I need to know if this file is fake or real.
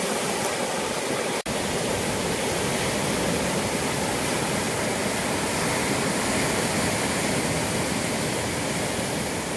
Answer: real